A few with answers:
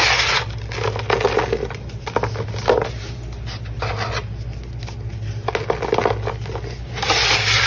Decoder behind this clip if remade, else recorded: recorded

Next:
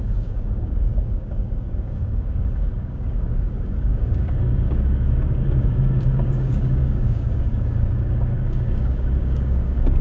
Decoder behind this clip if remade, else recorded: remade, codec, DAC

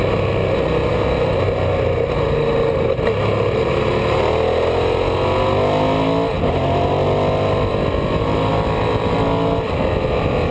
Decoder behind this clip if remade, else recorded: recorded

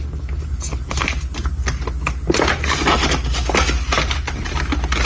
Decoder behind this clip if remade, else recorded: recorded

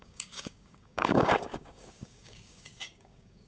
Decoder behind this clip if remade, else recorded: remade, codec, DAC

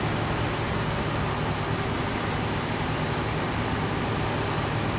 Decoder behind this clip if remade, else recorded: recorded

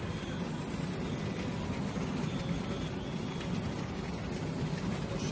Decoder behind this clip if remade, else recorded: recorded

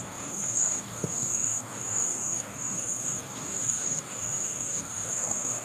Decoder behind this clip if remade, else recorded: remade, codec, DAC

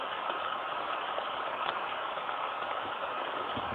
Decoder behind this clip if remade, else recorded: remade, codec, DAC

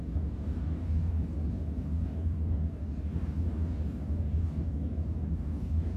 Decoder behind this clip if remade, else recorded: remade, codec, DAC